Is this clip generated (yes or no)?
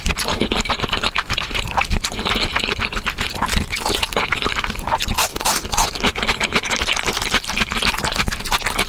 no